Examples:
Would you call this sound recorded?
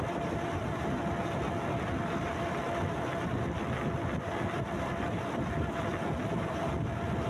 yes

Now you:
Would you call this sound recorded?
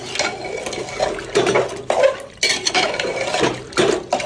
yes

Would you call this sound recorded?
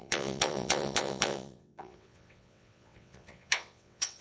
no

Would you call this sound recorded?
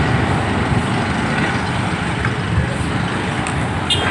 yes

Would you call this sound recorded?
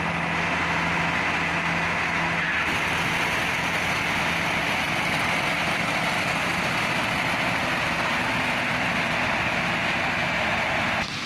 yes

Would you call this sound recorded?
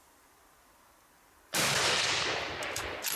no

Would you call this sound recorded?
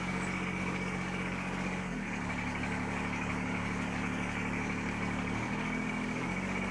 no